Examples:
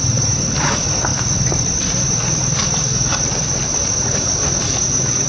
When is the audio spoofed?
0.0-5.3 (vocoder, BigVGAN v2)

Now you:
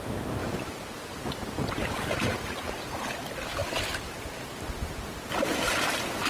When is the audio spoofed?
0.4-2.8 (vocoder, BigVGAN v2); 3.6-5.8

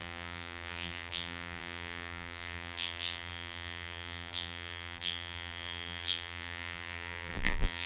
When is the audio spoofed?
0.0-7.9 (vocoder, BigVGAN v2)

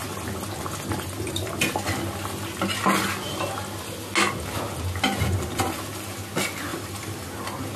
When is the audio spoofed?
6.7-7.3 (vocoder, BigVGAN v2)

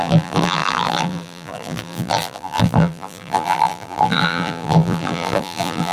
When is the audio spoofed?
0.0-5.9 (vocoder, BigVGAN v2)

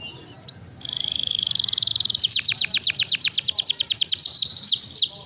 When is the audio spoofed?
0.0-5.3 (vocoder, BigVGAN v2)

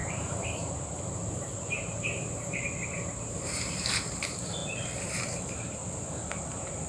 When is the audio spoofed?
0.0-6.9 (vocoder, BigVGAN v2)

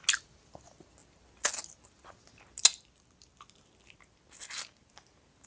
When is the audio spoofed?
none